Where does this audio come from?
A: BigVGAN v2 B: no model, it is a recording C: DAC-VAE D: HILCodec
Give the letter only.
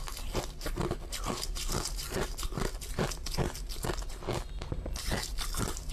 A